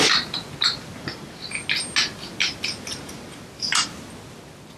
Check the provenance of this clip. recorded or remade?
recorded